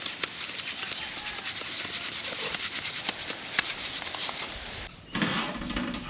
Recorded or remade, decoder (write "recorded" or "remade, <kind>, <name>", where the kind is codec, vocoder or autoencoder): recorded